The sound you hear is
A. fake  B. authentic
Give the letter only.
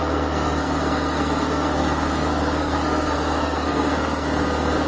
A